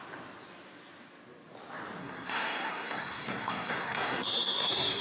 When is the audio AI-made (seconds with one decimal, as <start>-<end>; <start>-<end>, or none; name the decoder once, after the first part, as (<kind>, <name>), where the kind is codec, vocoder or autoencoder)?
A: 2.0-5.0 (codec, SNAC)